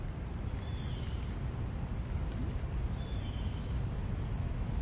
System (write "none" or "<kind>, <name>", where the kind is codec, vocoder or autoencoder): none